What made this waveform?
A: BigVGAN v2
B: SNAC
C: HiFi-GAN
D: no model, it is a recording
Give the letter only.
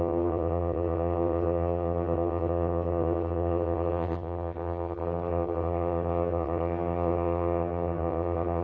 C